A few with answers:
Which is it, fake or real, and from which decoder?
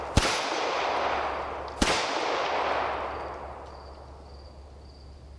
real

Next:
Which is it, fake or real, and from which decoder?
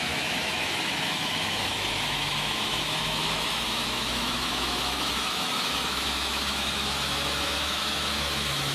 fake, autoencoder, DAC-VAE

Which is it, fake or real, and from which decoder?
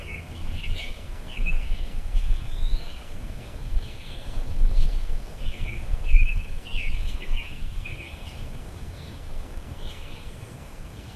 fake, codec, SNAC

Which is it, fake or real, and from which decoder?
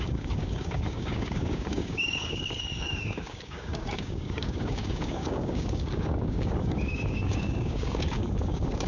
fake, codec, DAC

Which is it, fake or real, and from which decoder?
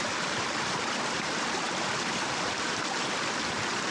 fake, vocoder, BigVGAN v2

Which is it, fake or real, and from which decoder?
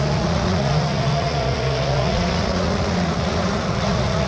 fake, vocoder, Vocos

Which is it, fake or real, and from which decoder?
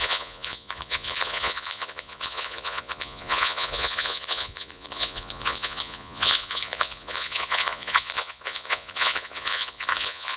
fake, vocoder, Vocos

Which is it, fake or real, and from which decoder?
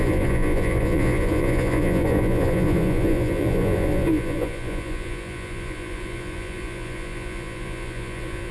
fake, vocoder, Vocos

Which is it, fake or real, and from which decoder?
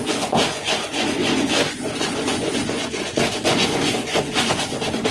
fake, vocoder, Vocos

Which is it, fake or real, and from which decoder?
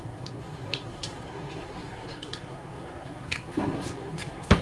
fake, codec, SNAC